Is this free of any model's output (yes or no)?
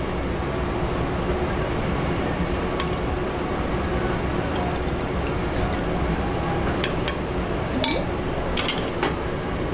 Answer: yes